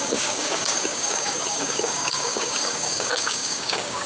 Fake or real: fake